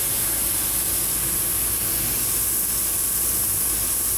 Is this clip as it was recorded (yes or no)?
yes